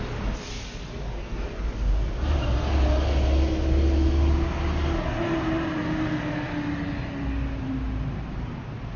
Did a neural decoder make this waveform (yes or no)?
no